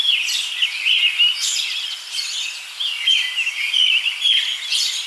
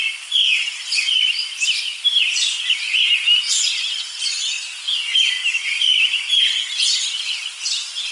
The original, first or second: first